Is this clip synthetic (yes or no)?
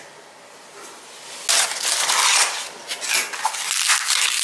no